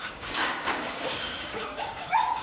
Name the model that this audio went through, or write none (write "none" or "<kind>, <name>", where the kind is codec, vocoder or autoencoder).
codec, DAC